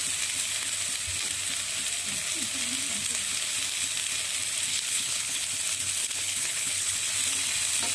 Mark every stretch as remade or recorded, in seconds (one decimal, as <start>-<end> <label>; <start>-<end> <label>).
0.0-4.7 recorded; 4.7-5.4 remade; 5.4-6.0 recorded; 6.0-7.0 remade; 7.0-7.9 recorded